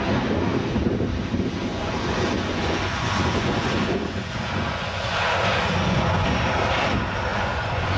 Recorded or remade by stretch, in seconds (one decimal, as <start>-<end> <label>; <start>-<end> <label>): 0.0-1.7 recorded; 1.7-6.5 remade; 6.5-7.3 recorded; 7.3-8.0 remade